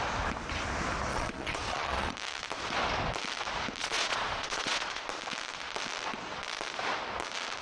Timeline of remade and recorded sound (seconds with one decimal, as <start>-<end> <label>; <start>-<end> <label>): 0.0-1.1 recorded; 1.1-2.1 remade; 2.1-3.8 recorded; 3.8-5.0 remade; 5.0-7.6 recorded